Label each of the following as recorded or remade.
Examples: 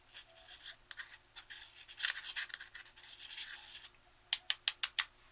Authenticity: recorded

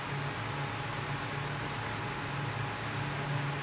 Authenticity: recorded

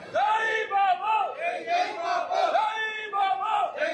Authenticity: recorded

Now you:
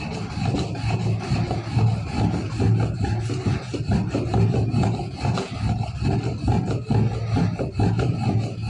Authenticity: recorded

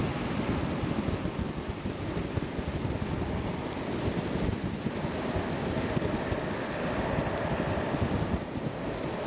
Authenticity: recorded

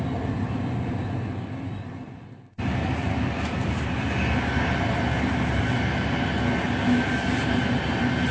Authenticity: recorded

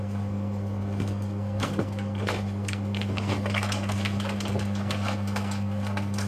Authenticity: remade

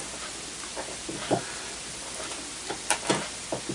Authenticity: recorded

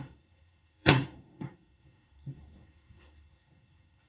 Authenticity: remade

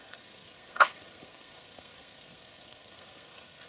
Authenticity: remade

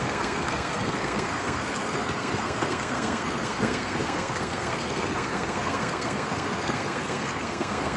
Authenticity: remade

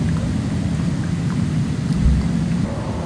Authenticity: recorded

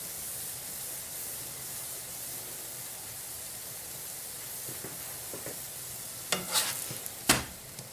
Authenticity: recorded